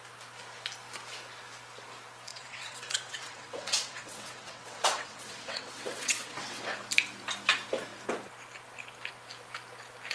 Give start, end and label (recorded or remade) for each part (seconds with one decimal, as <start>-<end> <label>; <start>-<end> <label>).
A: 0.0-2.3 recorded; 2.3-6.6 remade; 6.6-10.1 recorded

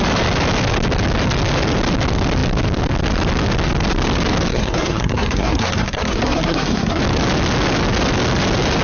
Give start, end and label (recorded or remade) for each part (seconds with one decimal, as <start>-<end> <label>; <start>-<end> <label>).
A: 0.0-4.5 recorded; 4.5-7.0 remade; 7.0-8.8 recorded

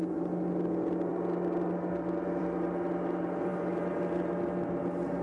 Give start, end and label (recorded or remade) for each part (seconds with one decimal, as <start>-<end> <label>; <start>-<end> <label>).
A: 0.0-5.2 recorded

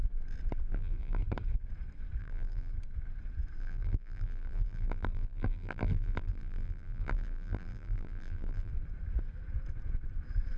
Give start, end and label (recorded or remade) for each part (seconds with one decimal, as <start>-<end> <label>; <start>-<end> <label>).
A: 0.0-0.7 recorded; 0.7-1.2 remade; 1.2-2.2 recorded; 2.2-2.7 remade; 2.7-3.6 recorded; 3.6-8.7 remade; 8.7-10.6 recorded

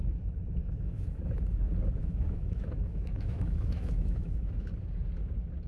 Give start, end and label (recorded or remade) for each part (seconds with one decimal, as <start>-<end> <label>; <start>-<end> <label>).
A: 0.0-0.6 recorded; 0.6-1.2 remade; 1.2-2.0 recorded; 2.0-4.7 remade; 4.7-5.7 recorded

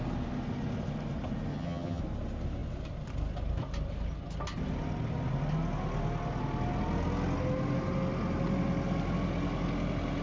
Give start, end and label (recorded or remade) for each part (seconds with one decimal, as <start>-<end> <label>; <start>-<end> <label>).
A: 0.0-1.5 recorded; 1.5-2.0 remade; 2.0-10.2 recorded